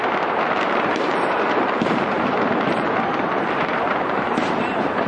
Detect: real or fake fake